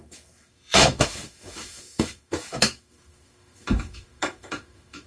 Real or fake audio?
fake